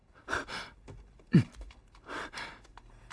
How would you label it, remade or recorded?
recorded